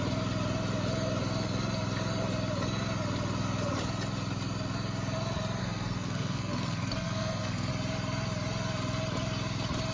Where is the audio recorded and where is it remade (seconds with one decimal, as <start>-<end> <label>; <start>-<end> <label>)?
0.0-5.6 recorded; 5.6-7.7 remade; 7.7-9.9 recorded